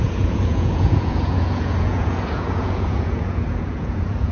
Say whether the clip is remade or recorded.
remade